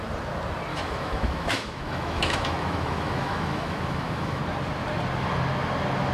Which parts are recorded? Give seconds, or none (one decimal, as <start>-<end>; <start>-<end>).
0.0-0.7; 4.4-6.1